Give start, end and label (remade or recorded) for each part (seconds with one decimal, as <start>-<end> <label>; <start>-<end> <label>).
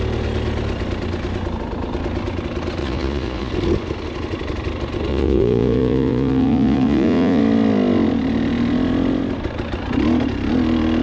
0.0-2.8 recorded; 2.8-3.5 remade; 3.5-5.1 recorded; 5.1-7.4 remade; 7.4-11.0 recorded